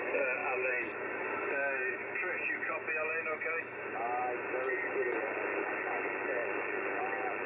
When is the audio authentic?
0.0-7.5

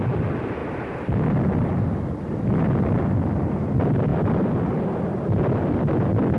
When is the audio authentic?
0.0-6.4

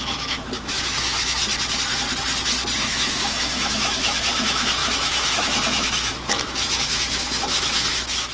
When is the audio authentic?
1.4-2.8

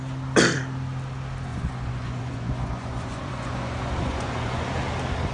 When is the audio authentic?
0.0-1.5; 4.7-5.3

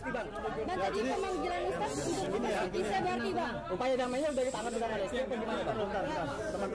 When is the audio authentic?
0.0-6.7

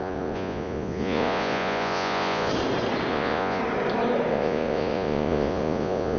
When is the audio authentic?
2.5-3.1; 3.6-4.3